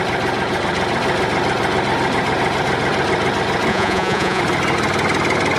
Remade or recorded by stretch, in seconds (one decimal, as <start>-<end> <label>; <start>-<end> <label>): 0.0-3.7 recorded; 3.7-4.4 remade; 4.4-5.6 recorded